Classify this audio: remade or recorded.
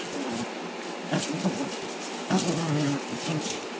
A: recorded